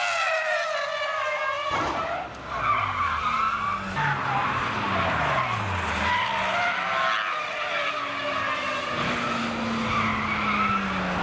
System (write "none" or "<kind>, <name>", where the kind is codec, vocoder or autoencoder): none